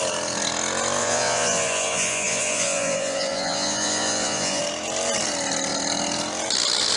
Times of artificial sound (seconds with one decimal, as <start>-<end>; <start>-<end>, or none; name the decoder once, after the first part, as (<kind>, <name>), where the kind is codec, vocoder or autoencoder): 1.0-4.6 (vocoder, Vocos)

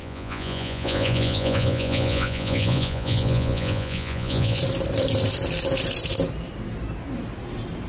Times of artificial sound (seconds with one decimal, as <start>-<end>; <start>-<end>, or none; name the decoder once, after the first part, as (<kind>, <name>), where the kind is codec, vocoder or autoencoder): 0.0-4.6 (vocoder, Vocos)

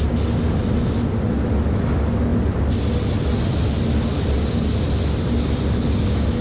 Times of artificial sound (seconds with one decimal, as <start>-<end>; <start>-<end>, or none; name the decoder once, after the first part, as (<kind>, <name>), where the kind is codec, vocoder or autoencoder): none

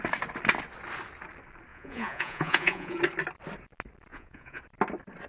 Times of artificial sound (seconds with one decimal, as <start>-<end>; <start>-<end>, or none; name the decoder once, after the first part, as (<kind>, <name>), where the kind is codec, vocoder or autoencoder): 1.7-3.0 (vocoder, Vocos); 4.1-4.6

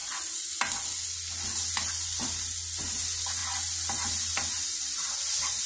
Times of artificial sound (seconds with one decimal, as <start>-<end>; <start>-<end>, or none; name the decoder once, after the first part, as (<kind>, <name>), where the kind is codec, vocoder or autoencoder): none

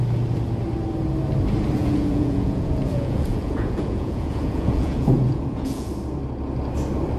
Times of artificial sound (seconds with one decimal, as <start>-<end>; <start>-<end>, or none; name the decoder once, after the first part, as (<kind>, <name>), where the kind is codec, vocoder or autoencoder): 1.8-5.9 (vocoder, Vocos)

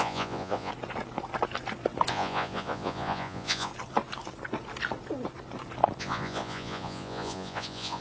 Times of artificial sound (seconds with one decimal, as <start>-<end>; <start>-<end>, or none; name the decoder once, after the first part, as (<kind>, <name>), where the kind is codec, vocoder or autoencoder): 0.0-0.7 (vocoder, Vocos); 2.1-3.7; 6.0-8.0

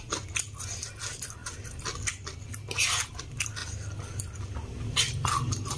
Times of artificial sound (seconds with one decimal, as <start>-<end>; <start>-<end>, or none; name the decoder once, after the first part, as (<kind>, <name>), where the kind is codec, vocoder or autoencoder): none